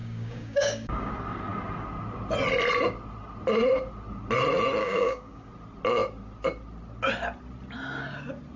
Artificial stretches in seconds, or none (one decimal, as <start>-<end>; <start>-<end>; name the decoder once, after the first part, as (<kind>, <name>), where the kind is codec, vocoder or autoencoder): 0.0-1.1 (codec, DAC); 4.8-5.5